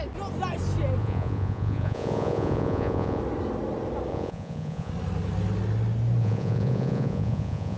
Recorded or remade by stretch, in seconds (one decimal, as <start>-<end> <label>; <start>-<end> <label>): 0.0-1.0 recorded; 1.0-3.2 remade; 3.2-4.1 recorded; 4.1-4.9 remade; 4.9-6.2 recorded; 6.2-7.8 remade